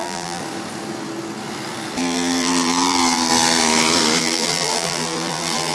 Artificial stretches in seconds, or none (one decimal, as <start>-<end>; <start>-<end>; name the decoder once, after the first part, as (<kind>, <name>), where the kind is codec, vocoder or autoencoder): 0.0-0.4 (vocoder, BigVGAN v2); 2.0-3.3; 4.2-5.7